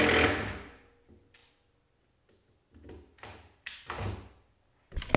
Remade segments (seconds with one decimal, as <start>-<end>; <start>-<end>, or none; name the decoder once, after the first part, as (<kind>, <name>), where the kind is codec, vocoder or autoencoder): none